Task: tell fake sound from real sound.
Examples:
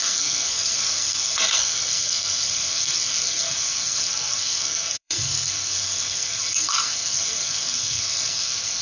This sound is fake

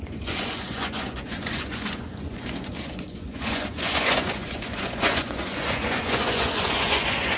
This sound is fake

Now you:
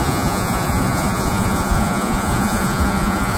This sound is fake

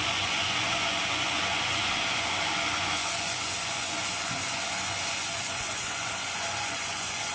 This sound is fake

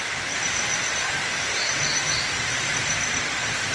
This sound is fake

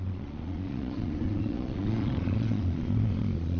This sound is fake